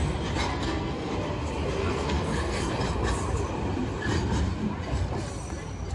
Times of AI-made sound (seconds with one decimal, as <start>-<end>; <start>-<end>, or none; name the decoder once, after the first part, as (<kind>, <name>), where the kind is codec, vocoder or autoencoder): 0.5-1.1 (codec, SNAC); 1.8-2.7